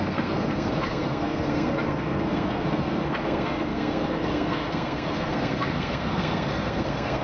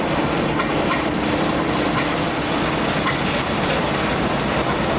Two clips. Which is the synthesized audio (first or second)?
first